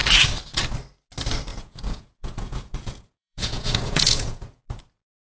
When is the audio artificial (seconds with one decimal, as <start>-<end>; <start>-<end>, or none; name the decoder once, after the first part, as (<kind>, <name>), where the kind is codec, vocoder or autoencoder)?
1.5-4.6 (vocoder, Vocos)